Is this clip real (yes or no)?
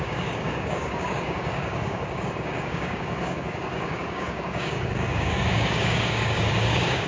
no